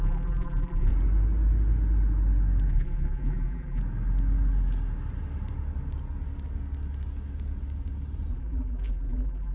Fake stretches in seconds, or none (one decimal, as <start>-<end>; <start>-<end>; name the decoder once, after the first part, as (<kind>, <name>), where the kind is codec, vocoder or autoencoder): 0.0-0.9 (vocoder, BigVGAN v2); 2.7-3.8; 8.3-9.5